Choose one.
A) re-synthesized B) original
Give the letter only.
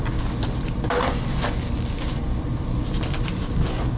B